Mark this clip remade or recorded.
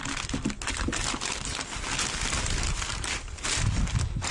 recorded